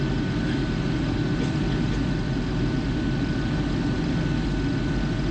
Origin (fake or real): real